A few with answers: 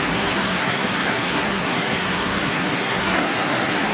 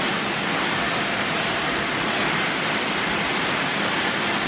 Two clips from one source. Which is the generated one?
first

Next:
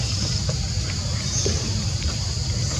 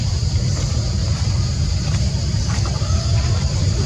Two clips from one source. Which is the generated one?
second